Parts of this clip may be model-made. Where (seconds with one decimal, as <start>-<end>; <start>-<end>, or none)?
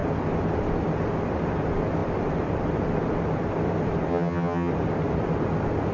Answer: 4.1-4.7